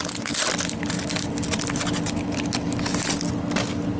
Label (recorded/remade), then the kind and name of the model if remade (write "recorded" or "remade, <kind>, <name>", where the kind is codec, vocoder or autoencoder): recorded